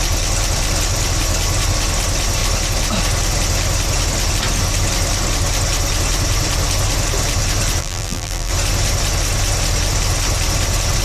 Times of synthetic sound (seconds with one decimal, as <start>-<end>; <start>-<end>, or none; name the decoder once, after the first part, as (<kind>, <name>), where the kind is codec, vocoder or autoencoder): 7.8-8.5 (vocoder, BigVGAN v2)